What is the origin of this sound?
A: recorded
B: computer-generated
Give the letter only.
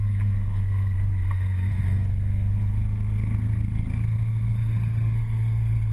B